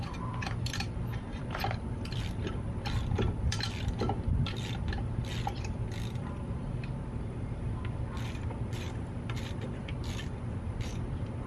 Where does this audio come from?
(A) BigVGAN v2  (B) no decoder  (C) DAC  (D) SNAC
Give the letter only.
A